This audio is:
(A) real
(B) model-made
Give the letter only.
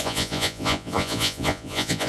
B